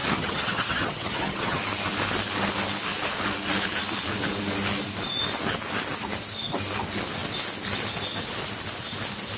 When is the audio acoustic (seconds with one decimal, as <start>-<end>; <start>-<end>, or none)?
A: 1.6-9.4